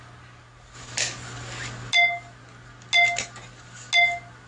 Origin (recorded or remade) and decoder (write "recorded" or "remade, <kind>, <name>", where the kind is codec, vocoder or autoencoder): recorded